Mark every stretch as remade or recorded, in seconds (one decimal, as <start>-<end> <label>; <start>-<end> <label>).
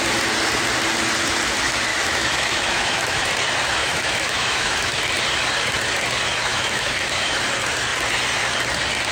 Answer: 0.0-1.9 recorded; 1.9-3.3 remade; 3.3-3.8 recorded; 3.8-5.0 remade; 5.0-6.5 recorded; 6.5-7.4 remade; 7.4-9.1 recorded